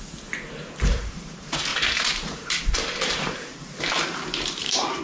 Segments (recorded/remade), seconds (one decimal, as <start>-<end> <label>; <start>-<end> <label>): 0.0-1.7 recorded; 1.7-5.0 remade